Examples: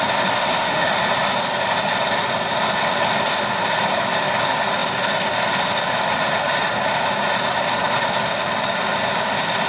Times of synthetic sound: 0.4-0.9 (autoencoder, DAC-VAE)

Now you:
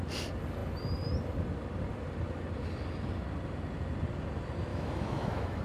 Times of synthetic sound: 4.7-5.6 (autoencoder, DAC-VAE)

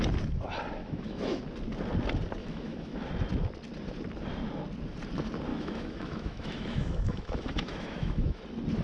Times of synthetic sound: 0.8-1.4 (autoencoder, DAC-VAE); 2.4-3.1; 5.5-8.4

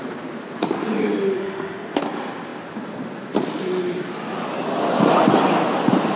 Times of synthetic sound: 1.4-2.0 (autoencoder, DAC-VAE)

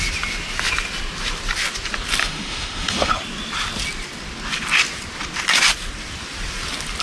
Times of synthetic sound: 2.2-3.1 (autoencoder, DAC-VAE)